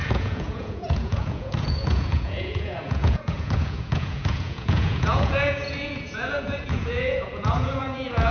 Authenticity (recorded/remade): remade